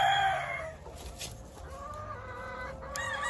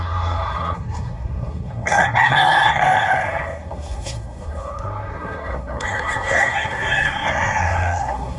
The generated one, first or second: second